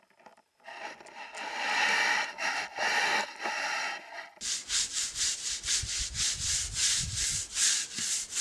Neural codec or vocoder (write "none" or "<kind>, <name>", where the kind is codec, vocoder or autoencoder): none